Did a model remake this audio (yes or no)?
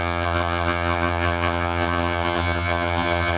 yes